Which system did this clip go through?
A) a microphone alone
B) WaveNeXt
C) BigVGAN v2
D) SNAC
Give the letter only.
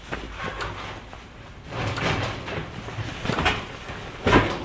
A